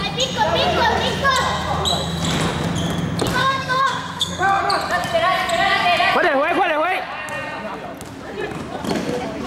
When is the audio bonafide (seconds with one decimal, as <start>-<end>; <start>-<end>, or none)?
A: 0.0-3.4; 4.6-9.5